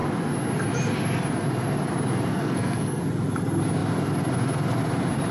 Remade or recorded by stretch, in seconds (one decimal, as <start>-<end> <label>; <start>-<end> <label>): 0.0-2.3 recorded; 2.3-3.0 remade; 3.0-5.3 recorded

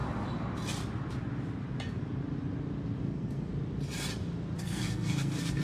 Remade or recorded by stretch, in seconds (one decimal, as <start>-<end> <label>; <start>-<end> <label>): 0.0-3.0 recorded; 3.0-3.5 remade; 3.5-4.6 recorded; 4.6-5.6 remade

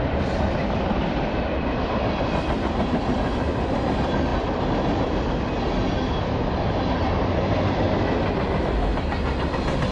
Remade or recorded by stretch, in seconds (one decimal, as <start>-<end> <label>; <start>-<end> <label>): 0.0-9.9 recorded